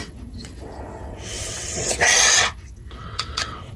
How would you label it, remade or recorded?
remade